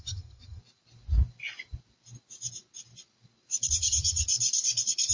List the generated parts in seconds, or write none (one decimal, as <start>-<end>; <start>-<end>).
0.0-0.6; 3.7-4.3